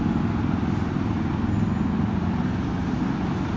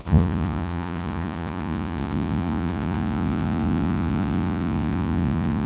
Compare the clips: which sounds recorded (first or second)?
first